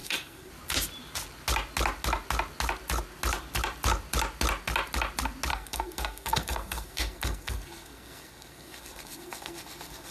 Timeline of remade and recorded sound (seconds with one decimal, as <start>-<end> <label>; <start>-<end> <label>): 0.0-0.5 remade; 0.5-5.5 recorded; 5.5-10.1 remade